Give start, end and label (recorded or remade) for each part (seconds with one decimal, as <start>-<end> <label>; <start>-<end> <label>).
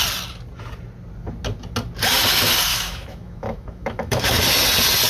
0.0-2.7 recorded; 2.7-4.4 remade; 4.4-5.1 recorded